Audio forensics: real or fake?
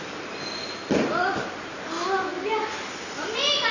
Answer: real